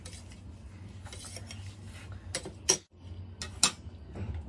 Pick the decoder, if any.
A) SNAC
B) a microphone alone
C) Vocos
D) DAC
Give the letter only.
B